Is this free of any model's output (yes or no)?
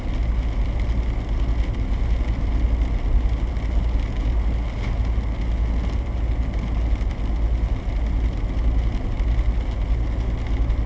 yes